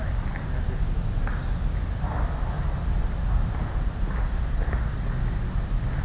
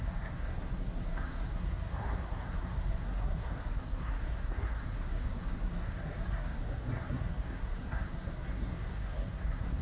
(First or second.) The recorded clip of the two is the first